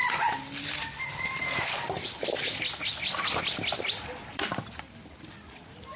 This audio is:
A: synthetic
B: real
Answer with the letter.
A